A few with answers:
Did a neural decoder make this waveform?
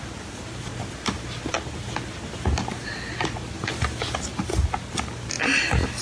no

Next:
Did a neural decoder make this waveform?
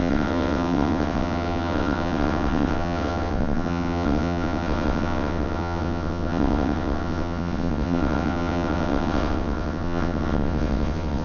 yes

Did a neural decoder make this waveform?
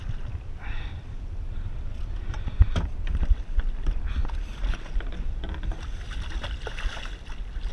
no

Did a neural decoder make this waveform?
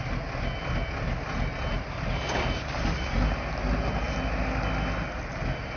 no